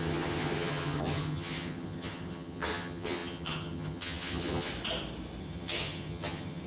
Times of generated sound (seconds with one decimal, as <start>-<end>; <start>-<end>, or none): 0.0-4.7; 5.4-6.7